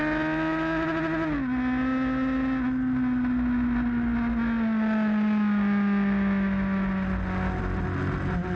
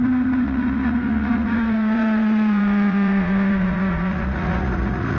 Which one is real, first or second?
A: first